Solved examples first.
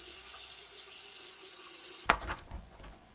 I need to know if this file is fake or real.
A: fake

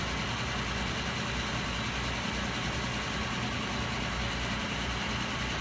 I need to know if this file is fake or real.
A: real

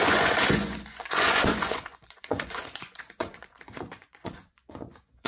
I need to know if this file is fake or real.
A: fake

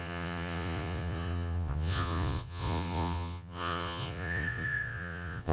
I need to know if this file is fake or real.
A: fake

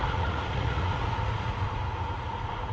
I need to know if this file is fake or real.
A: fake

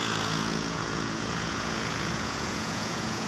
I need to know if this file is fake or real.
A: fake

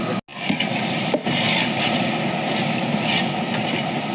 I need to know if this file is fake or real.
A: real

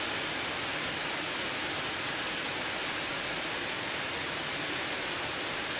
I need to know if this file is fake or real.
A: real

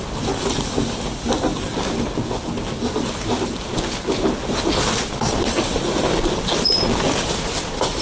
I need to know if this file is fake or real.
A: real